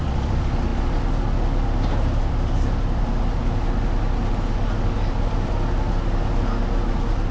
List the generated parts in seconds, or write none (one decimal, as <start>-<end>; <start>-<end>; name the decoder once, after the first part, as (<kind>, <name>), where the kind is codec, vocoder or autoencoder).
none